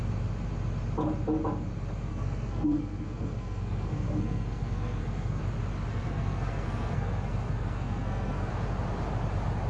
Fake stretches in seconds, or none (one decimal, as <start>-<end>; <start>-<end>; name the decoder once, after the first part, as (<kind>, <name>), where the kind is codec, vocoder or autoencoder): 2.1-5.4 (codec, SNAC); 5.9-8.5